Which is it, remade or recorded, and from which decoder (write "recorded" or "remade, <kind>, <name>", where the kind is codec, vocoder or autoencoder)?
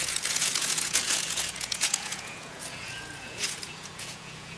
remade, vocoder, Vocos